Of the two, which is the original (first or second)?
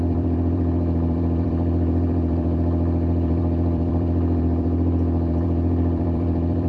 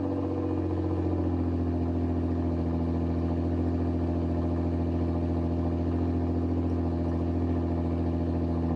second